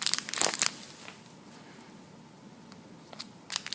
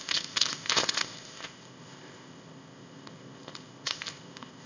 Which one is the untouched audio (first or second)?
first